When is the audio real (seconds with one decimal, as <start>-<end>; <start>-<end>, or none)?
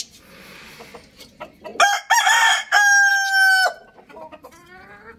0.0-5.2